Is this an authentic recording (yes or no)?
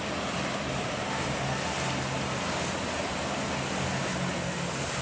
yes